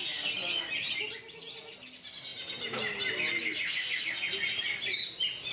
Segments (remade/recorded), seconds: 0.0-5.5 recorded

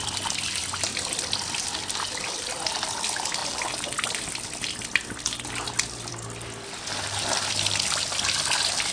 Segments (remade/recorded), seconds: 0.0-8.9 recorded